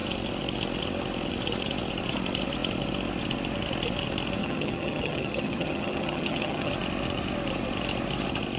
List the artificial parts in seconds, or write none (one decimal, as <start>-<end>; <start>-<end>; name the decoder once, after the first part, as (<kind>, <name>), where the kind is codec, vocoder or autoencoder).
4.4-6.7 (vocoder, HiFi-GAN)